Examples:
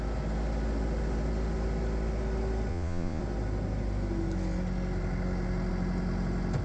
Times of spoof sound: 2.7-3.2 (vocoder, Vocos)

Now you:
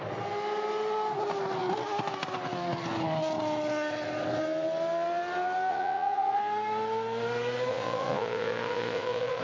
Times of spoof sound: 5.7-6.4 (vocoder, Vocos); 7.7-9.4

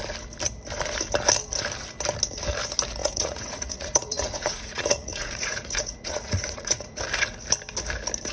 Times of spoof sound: 3.0-7.0 (vocoder, Vocos)

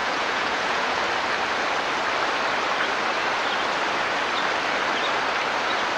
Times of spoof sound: 0.0-1.0 (vocoder, Vocos)

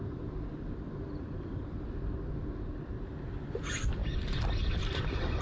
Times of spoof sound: none

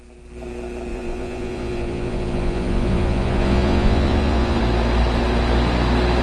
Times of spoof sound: 0.9-4.6 (vocoder, Vocos)